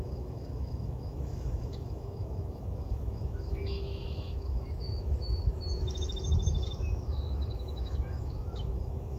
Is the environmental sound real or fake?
fake